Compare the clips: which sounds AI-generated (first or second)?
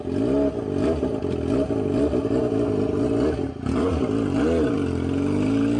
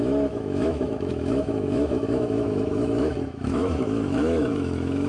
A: second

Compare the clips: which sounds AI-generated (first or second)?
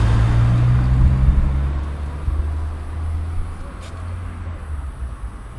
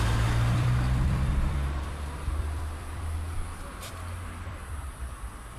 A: second